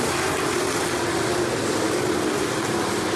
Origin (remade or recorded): recorded